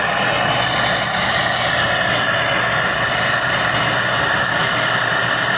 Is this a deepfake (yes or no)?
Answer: no